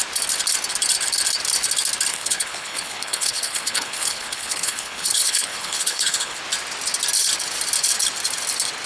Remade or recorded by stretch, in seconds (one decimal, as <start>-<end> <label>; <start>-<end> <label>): 0.0-2.1 recorded; 2.1-6.4 remade; 6.4-8.9 recorded